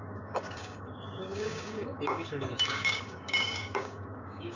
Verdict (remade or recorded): remade